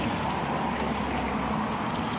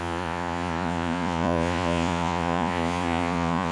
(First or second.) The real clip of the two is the first